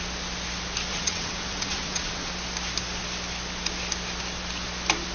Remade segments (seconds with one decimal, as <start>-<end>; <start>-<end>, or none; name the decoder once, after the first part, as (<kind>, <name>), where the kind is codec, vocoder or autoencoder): 0.9-2.3 (vocoder, WaveNeXt)